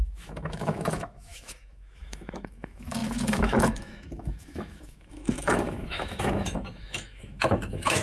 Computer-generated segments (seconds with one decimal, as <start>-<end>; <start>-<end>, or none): 0.0-8.0